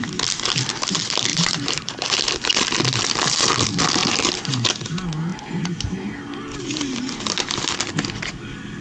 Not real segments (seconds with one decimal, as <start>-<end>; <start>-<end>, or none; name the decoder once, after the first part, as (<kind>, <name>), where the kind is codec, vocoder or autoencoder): 1.3-2.2 (vocoder, BigVGAN v2); 4.0-4.7